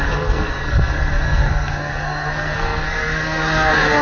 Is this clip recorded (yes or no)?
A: no